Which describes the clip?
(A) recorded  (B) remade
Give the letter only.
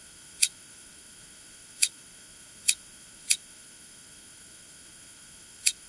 B